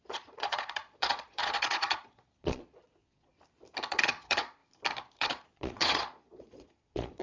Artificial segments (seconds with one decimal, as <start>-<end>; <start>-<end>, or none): 0.0-3.3; 3.9-4.6; 5.2-7.2